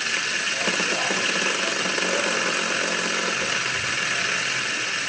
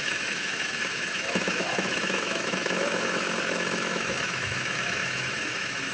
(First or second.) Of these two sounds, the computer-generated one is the second